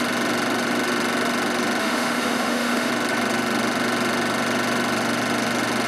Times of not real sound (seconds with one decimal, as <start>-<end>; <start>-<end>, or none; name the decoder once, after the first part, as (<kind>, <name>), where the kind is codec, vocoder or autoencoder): 1.8-2.9 (autoencoder, DAC-VAE)